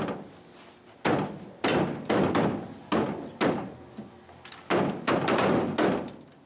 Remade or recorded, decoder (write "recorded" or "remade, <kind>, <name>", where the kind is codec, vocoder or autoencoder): recorded